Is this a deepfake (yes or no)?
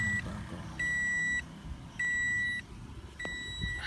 no